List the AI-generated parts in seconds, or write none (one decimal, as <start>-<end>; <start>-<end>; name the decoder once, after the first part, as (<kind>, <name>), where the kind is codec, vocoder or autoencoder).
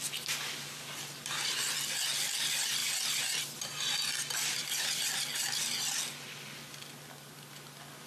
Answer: none